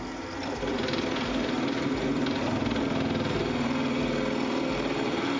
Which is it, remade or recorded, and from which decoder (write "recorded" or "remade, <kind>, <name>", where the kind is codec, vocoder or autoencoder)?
remade, vocoder, BigVGAN v2